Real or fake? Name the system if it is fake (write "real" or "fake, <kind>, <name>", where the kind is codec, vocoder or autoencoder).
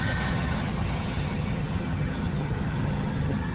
fake, vocoder, HiFi-GAN